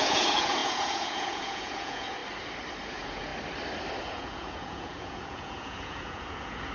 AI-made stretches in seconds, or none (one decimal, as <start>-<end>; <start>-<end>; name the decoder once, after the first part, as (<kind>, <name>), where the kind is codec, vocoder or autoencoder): 0.0-2.2 (vocoder, Vocos); 2.9-3.3; 4.0-6.7

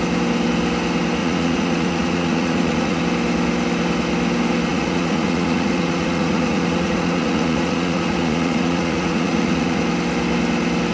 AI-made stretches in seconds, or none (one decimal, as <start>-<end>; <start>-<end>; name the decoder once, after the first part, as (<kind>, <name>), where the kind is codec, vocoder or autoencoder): 1.2-3.0 (vocoder, Vocos); 4.7-9.8

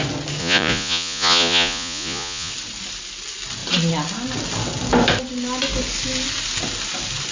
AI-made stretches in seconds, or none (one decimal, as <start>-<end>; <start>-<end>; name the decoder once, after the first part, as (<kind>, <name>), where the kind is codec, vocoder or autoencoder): 0.4-2.5 (vocoder, Vocos)

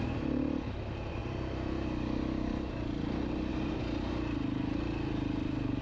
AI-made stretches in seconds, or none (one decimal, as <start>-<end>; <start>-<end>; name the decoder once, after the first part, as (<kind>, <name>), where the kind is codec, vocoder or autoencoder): none

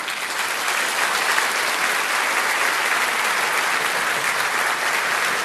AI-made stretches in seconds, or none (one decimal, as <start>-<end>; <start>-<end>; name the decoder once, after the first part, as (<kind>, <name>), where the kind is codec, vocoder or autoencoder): none

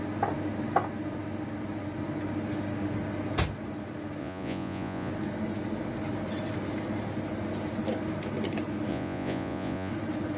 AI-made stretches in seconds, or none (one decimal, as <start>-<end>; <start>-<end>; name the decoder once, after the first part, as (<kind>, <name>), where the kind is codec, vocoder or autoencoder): 4.2-5.1 (vocoder, Vocos); 8.9-9.9